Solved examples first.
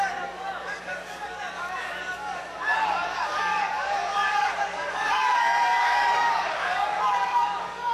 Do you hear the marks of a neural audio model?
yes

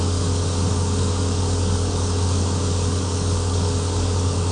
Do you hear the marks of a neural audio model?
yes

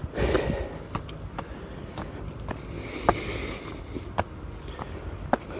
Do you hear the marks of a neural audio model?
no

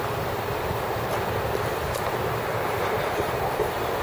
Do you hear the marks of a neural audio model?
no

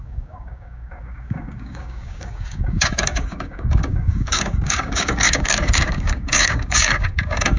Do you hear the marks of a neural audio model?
yes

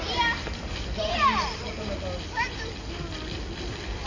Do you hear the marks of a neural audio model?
no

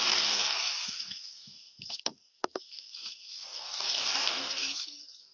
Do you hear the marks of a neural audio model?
yes